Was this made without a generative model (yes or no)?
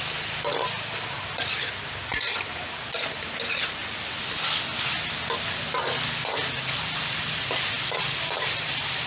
yes